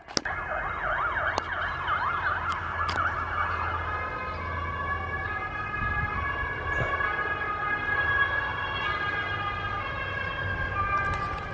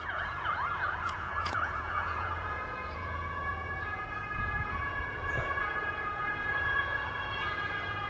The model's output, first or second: second